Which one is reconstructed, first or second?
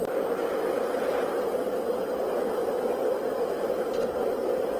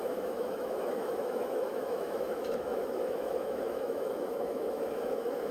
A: second